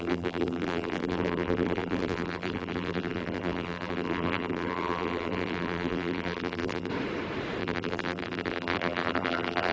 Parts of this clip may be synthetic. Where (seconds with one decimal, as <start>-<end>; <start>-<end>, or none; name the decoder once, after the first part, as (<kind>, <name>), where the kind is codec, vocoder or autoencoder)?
0.0-6.9 (vocoder, BigVGAN v2); 7.6-9.7